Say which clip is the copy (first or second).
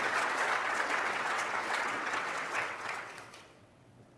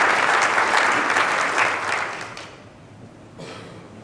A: first